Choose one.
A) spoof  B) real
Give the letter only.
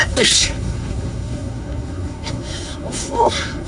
A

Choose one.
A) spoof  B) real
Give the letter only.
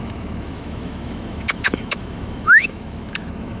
A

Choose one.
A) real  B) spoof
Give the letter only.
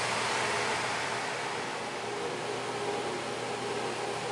A